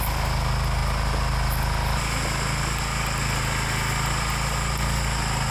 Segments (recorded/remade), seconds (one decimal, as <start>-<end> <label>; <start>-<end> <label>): 0.0-5.5 recorded